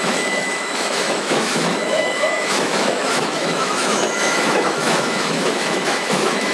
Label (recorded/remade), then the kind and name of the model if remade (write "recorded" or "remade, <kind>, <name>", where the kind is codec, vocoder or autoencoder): remade, autoencoder, DAC-VAE